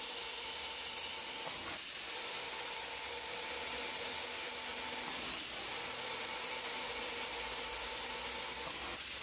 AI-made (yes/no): no